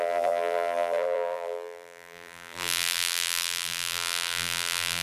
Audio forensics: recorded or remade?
remade